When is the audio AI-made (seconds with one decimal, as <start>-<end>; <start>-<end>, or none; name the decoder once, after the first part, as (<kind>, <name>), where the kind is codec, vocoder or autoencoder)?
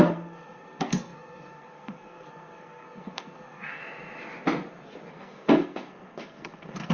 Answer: 0.0-3.8 (codec, SNAC); 5.1-6.9